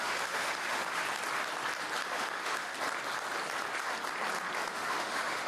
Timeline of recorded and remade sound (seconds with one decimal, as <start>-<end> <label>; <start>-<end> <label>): 0.0-1.0 remade; 1.0-2.1 recorded; 2.1-2.7 remade; 2.7-4.7 recorded; 4.7-5.5 remade